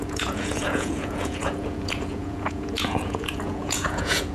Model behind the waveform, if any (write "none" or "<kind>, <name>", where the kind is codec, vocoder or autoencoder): vocoder, Vocos